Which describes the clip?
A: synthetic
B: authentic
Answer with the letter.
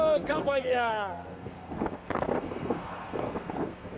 A